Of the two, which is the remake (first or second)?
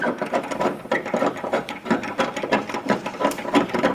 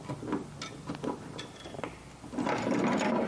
first